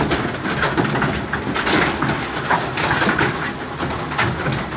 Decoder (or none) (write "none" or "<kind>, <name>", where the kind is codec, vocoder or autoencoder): none